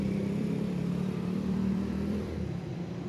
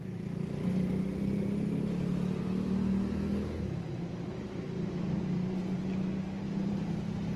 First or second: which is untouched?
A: second